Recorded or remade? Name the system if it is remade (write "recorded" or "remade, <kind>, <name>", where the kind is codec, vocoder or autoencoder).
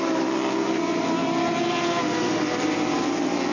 recorded